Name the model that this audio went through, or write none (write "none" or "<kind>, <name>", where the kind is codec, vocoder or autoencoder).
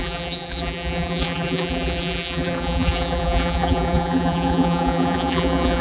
vocoder, BigVGAN v2